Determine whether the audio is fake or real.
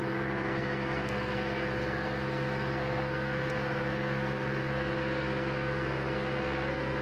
fake